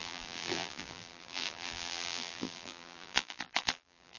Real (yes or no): no